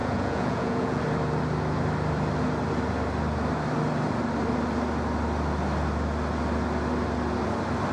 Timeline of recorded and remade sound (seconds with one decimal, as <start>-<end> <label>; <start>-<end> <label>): 0.0-1.0 remade; 1.0-7.9 recorded